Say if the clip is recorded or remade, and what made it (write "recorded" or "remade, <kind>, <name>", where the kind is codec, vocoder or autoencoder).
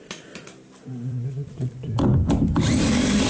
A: remade, vocoder, BigVGAN v2